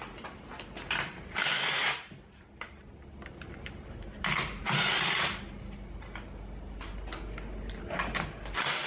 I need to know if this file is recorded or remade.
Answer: recorded